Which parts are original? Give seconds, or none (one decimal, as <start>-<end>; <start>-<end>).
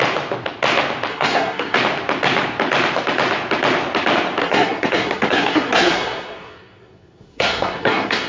0.0-1.1; 1.8-4.4